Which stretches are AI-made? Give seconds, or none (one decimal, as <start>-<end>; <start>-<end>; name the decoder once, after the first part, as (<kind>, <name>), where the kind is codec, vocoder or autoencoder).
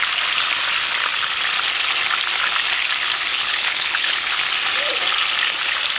3.3-4.4 (codec, HILCodec)